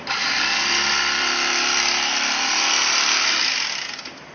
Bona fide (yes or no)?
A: no